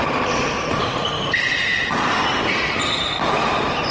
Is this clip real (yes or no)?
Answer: yes